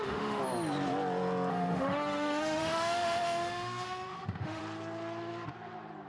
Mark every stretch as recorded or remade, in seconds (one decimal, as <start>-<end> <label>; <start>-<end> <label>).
0.0-0.4 remade; 0.4-1.5 recorded; 1.5-4.6 remade; 4.6-6.1 recorded